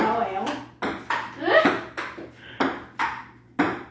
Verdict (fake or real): real